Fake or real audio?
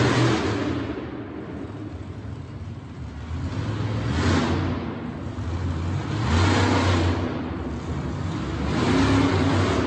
real